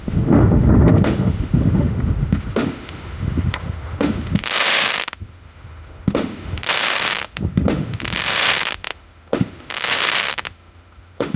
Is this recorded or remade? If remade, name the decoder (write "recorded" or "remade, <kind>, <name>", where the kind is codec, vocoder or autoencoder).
remade, autoencoder, DAC-VAE